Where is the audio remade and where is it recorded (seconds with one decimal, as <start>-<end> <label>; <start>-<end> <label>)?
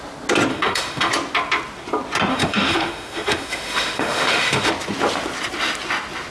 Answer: 0.0-0.5 recorded; 0.5-1.1 remade; 1.1-2.3 recorded; 2.3-4.7 remade; 4.7-6.3 recorded